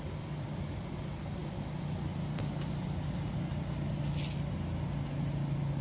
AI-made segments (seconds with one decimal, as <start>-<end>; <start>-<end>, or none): none